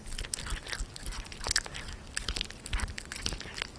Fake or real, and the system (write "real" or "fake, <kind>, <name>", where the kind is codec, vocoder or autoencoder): real